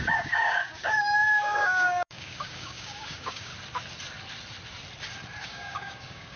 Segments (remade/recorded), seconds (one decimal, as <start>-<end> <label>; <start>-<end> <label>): 0.0-3.5 remade; 3.5-5.4 recorded; 5.4-6.4 remade